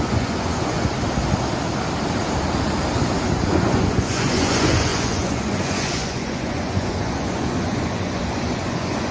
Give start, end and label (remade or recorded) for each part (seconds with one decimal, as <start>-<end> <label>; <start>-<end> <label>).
0.0-0.9 remade; 0.9-3.5 recorded; 3.5-9.1 remade